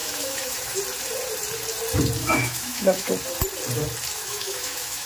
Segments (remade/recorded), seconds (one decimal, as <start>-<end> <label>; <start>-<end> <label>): 0.0-0.8 remade; 0.8-2.2 recorded; 2.2-3.1 remade; 3.1-4.1 recorded; 4.1-5.1 remade